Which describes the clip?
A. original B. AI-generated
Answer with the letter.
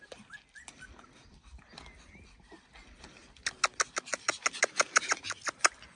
A